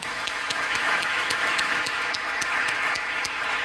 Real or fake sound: fake